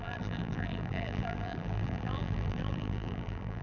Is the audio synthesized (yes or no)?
yes